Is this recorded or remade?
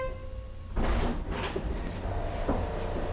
recorded